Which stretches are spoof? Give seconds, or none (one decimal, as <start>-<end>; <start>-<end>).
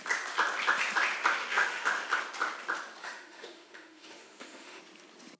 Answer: 1.4-2.1; 3.0-4.8